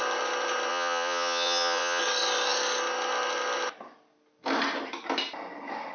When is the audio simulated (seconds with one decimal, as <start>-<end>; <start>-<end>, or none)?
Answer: 0.7-2.0